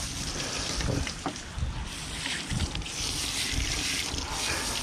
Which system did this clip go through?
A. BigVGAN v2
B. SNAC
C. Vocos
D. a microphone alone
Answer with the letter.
D